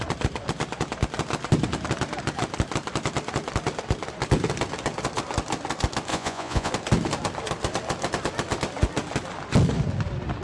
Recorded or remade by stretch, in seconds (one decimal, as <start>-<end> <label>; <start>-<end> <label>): 0.0-6.1 recorded; 6.1-6.7 remade; 6.7-10.4 recorded